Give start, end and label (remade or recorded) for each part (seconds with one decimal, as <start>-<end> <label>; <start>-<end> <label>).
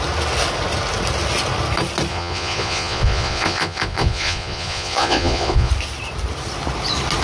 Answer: 0.0-2.1 recorded; 2.1-5.7 remade; 5.7-7.2 recorded